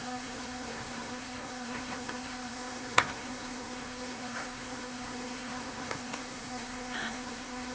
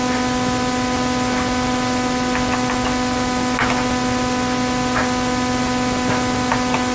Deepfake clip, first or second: first